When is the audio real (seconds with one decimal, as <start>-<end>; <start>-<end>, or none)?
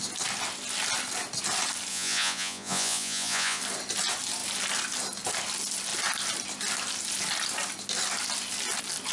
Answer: 0.0-1.9; 3.6-9.1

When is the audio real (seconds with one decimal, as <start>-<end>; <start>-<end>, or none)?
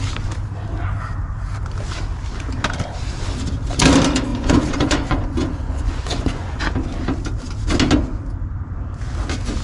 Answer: 0.0-4.3; 6.6-9.6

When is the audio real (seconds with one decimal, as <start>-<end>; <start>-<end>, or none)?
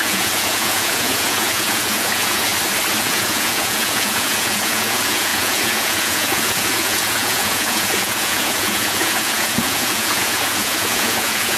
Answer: 2.5-3.0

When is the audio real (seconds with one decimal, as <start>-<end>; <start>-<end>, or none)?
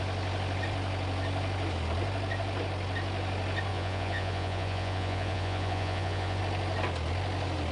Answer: 0.0-3.7; 6.4-7.7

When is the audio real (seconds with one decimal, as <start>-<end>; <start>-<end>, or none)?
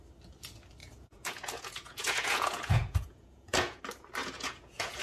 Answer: 0.0-0.8; 3.8-4.2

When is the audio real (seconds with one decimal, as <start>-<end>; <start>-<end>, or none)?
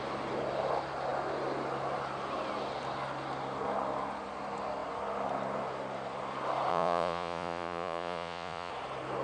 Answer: 0.0-6.7; 8.7-9.2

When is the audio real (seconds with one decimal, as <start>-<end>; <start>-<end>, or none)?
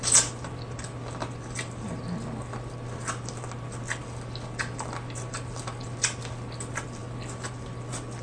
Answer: 0.0-8.2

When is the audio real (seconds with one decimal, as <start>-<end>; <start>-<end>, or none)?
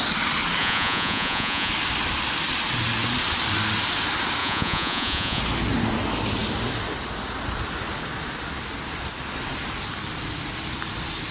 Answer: 0.0-0.6; 1.7-4.4; 5.4-11.3